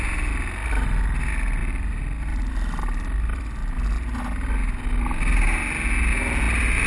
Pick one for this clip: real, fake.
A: real